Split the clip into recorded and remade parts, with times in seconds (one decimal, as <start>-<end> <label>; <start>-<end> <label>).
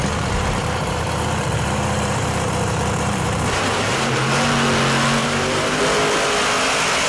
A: 0.0-4.3 remade; 4.3-5.2 recorded; 5.2-5.8 remade; 5.8-7.1 recorded